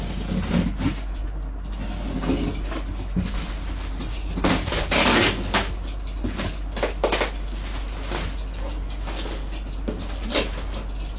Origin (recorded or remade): recorded